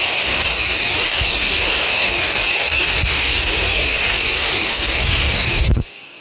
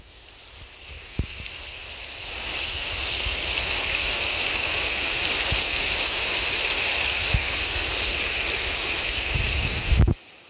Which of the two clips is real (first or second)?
second